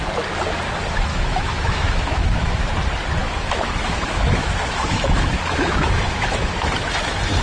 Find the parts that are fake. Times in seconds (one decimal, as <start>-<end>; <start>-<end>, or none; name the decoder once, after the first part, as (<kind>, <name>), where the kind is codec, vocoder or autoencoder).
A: 1.1-2.7 (autoencoder, DAC-VAE); 3.2-6.7